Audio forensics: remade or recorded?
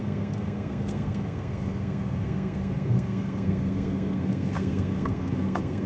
remade